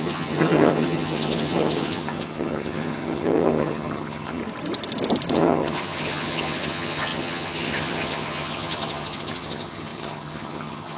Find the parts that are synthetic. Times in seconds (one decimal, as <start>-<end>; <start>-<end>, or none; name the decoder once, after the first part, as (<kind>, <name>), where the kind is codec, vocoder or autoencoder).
0.0-4.4 (vocoder, HiFi-GAN); 5.3-11.0